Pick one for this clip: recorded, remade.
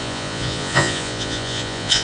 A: remade